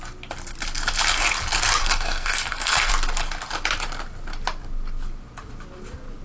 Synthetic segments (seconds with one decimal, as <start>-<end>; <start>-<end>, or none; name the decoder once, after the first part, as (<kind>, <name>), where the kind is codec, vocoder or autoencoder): 1.8-2.9 (codec, SNAC)